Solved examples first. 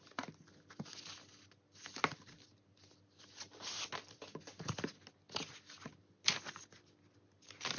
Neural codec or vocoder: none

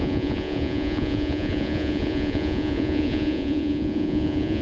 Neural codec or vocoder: vocoder, Vocos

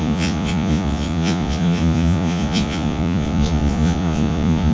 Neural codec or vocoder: vocoder, Vocos